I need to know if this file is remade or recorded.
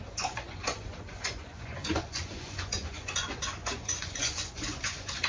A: remade